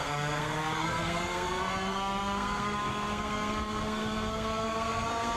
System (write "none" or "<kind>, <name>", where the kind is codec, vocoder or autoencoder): codec, SNAC